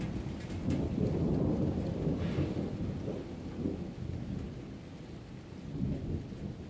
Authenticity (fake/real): real